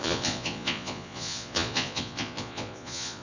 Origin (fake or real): fake